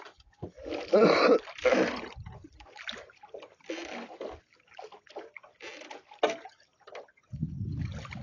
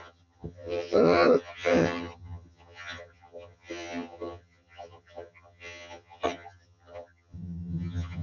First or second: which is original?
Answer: first